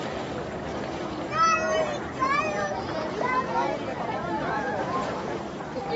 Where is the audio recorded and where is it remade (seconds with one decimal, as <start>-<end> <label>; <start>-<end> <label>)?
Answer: 0.0-0.7 recorded; 0.7-1.3 remade; 1.3-1.8 recorded; 1.8-5.4 remade; 5.4-6.0 recorded